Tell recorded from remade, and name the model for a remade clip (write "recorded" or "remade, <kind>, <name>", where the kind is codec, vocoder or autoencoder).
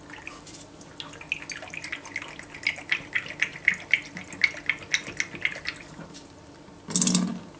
recorded